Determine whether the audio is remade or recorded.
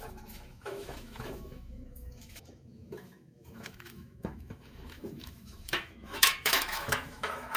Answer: remade